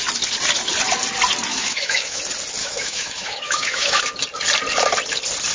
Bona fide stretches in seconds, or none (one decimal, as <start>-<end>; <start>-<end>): 0.0-1.5; 2.2-2.6; 4.0-5.5